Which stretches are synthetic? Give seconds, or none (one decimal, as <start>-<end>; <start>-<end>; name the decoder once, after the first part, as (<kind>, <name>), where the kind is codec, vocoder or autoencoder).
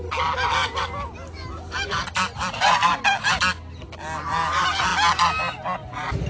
0.6-3.2 (vocoder, BigVGAN v2)